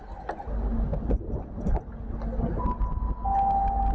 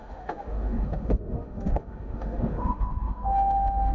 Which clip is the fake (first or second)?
second